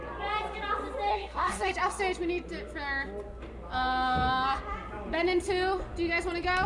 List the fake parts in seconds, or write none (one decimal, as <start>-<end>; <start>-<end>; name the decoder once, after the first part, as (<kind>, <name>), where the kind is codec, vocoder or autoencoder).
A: 1.1-1.7 (codec, SNAC)

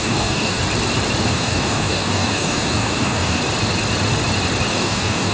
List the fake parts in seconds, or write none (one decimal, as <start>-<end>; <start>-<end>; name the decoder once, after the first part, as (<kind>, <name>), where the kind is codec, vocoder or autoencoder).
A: 0.0-0.6 (codec, DAC); 1.3-3.4; 4.7-5.3

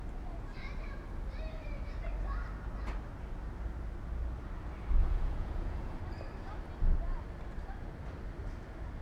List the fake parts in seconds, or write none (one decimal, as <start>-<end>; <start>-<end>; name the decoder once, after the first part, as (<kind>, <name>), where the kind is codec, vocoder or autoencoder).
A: 5.0-6.0 (vocoder, Vocos)